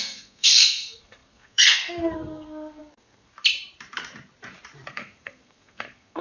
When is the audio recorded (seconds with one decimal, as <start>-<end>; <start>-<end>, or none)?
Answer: 3.3-4.9